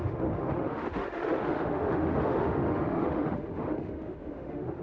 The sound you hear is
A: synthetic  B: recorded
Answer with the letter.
A